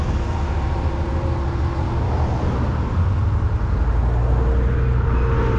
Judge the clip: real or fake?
real